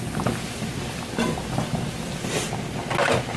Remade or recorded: recorded